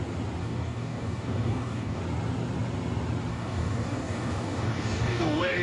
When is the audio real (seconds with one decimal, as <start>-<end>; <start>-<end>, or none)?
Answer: 0.0-0.4; 2.0-3.3